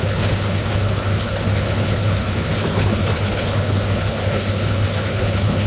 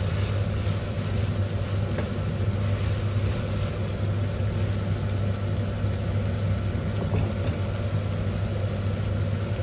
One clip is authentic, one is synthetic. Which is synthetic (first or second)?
first